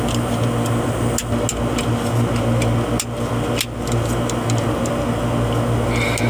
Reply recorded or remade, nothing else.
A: recorded